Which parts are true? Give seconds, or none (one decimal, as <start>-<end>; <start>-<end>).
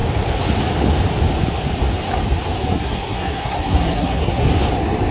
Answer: 0.0-2.7; 4.5-5.1